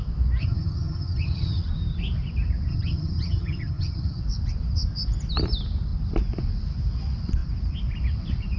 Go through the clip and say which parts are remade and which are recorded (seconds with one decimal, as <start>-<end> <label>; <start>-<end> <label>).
0.0-0.4 recorded; 0.4-1.6 remade; 1.6-2.7 recorded; 2.7-4.2 remade; 4.2-8.6 recorded